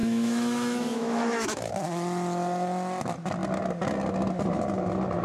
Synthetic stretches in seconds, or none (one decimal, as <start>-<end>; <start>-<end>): 0.0-1.7